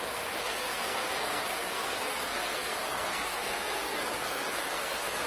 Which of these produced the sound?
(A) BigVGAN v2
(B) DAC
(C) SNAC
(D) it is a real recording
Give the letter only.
C